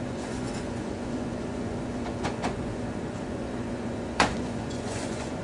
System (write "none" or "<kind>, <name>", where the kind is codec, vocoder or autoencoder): vocoder, Vocos